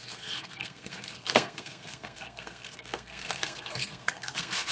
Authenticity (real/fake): fake